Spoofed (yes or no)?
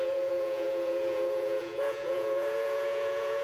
yes